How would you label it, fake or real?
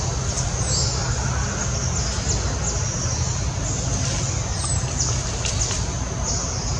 real